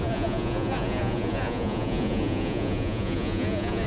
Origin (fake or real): fake